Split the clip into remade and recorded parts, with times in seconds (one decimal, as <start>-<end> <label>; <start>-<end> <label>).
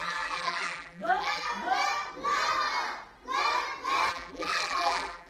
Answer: 0.0-1.5 remade; 1.5-4.1 recorded; 4.1-5.3 remade